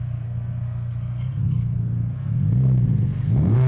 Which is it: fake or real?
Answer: fake